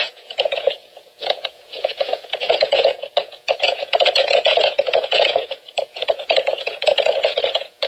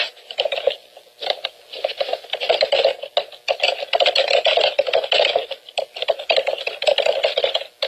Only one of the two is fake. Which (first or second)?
first